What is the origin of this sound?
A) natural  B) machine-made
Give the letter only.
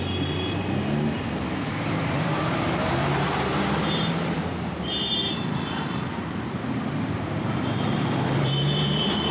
B